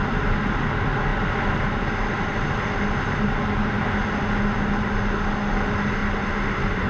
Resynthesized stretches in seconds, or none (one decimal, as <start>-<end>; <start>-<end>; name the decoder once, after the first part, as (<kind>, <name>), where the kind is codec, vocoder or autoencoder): 6.0-6.9 (vocoder, BigVGAN v2)